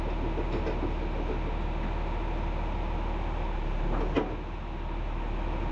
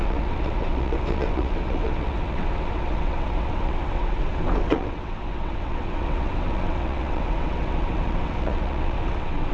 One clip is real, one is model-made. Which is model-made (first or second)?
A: second